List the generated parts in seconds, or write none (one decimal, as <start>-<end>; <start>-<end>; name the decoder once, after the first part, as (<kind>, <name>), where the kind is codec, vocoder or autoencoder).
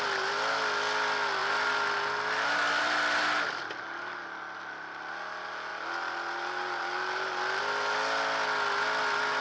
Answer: none